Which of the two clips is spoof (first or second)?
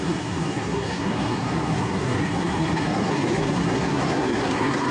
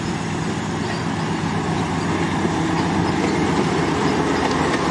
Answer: first